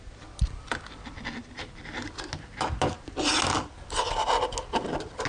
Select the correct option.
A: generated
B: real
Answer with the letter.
B